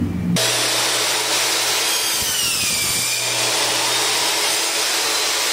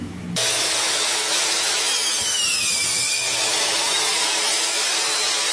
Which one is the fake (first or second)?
second